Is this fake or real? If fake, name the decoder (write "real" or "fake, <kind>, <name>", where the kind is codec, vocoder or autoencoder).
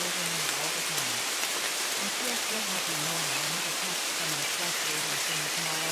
fake, vocoder, BigVGAN v2